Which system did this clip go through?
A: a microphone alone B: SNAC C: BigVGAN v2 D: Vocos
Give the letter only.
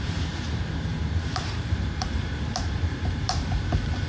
C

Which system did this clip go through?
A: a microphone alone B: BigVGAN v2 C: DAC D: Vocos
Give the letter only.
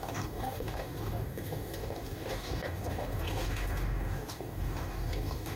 C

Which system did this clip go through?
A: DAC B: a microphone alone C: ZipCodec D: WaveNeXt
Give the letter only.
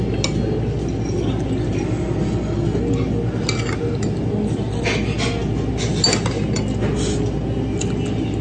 B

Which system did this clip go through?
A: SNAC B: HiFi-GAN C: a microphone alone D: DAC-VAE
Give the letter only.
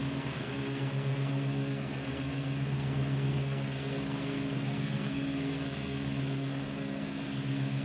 A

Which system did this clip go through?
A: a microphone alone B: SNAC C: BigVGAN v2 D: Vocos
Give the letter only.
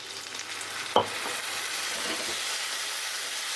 A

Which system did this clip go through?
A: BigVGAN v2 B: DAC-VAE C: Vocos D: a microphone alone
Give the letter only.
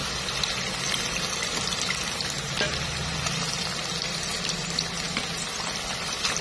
D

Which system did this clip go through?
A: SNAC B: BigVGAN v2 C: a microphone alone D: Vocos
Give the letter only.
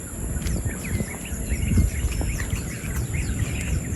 C